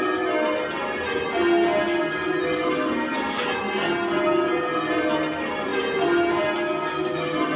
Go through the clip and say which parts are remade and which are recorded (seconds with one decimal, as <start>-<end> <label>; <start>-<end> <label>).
0.0-7.6 recorded